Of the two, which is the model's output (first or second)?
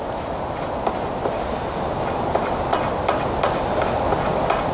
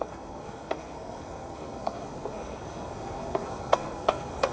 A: second